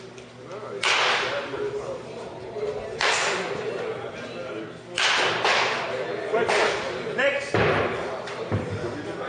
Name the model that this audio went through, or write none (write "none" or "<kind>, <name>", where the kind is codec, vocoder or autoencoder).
none